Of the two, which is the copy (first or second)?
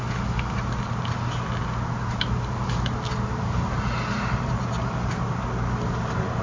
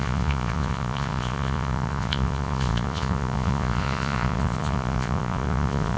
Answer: second